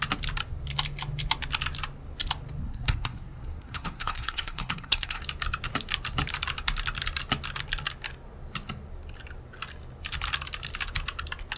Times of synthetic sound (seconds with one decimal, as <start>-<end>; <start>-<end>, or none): 2.6-5.2